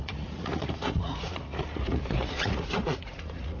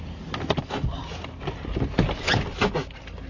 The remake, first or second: first